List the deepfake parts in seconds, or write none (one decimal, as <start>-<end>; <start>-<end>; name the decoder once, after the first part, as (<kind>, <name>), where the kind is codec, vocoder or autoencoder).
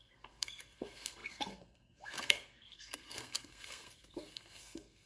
0.0-5.1 (codec, SNAC)